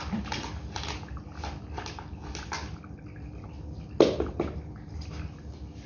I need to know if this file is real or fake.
real